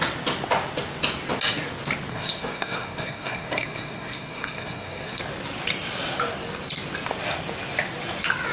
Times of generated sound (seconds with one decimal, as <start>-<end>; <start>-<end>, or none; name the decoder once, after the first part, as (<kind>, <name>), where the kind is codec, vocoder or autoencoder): 2.1-5.2 (codec, SNAC)